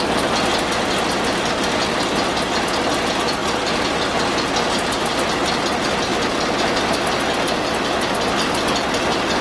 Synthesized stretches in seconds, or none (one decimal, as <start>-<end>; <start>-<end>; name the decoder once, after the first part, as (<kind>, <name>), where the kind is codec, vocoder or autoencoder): none